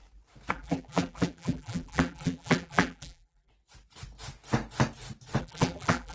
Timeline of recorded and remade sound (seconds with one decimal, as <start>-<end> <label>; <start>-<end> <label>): 0.0-0.5 recorded; 0.5-3.5 remade; 3.5-5.4 recorded; 5.4-6.1 remade